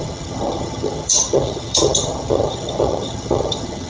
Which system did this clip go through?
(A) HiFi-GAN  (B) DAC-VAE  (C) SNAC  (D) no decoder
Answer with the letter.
A